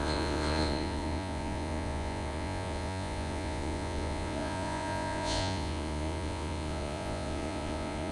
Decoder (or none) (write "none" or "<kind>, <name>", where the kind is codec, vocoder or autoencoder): vocoder, Vocos